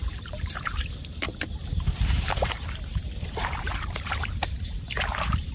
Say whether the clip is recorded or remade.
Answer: remade